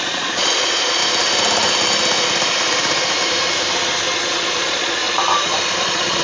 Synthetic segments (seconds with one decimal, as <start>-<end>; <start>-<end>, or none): 0.0-1.0; 4.2-5.0; 5.8-6.2